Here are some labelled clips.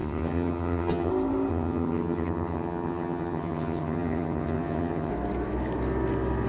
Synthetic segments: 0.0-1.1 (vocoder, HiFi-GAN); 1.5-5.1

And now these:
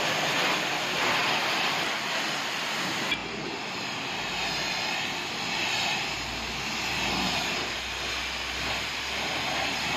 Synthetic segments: 1.2-2.6 (vocoder, BigVGAN v2)